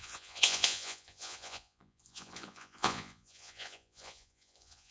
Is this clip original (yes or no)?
no